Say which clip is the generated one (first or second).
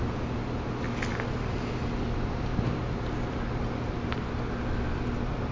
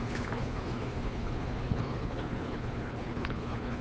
second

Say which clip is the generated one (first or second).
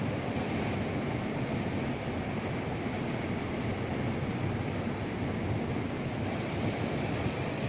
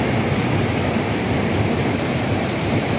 second